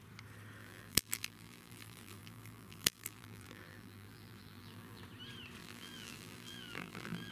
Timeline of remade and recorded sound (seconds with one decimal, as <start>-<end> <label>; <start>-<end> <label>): 0.0-0.6 recorded; 0.6-5.0 remade; 5.0-5.6 recorded; 5.6-7.3 remade